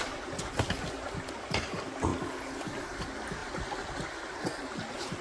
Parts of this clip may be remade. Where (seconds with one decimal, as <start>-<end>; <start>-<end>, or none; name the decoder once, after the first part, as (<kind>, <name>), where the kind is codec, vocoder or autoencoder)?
none